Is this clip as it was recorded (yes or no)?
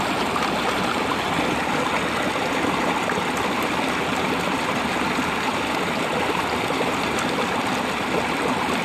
yes